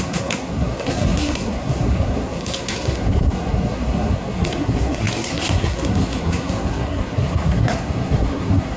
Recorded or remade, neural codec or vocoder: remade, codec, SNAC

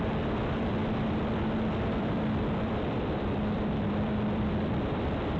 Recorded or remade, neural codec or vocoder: remade, vocoder, BigVGAN v2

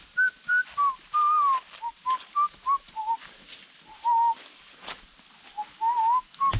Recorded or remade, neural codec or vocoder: recorded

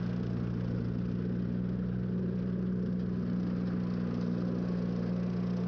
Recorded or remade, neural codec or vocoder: recorded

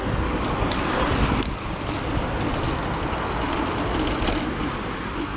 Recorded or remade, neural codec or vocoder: recorded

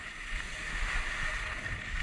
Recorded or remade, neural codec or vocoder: recorded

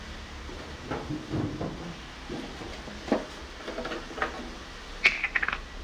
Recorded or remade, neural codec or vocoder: recorded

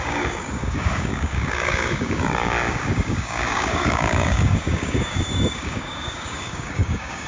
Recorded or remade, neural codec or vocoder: remade, codec, DAC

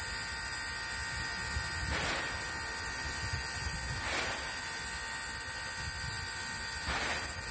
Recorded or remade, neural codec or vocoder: recorded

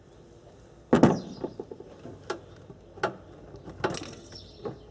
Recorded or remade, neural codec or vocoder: recorded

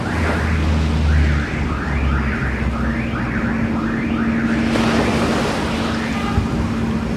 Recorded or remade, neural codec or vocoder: recorded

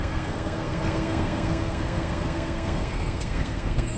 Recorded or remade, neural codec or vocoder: remade, codec, SNAC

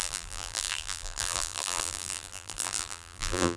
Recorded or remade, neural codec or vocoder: remade, vocoder, BigVGAN v2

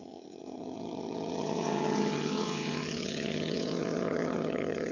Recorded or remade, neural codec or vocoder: remade, vocoder, HiFi-GAN